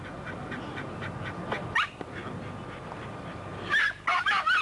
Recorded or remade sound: recorded